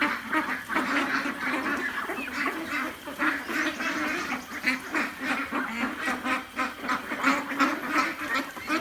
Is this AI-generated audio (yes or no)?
no